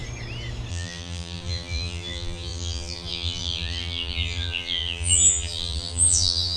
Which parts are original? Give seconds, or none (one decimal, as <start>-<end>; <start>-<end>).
0.0-0.7

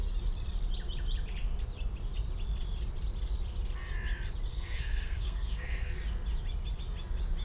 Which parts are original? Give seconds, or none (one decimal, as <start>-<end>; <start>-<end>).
0.0-4.5; 6.0-7.4

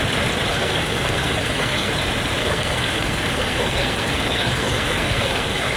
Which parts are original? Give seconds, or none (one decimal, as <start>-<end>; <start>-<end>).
0.0-0.5; 1.9-2.4